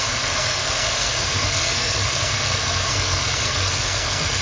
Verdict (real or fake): fake